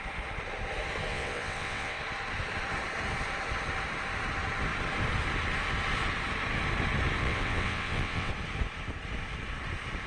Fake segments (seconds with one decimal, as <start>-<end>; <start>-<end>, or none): 1.1-2.0; 7.2-8.3